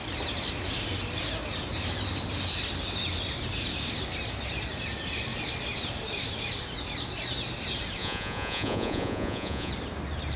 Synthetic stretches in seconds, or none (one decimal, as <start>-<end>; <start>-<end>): 8.0-9.7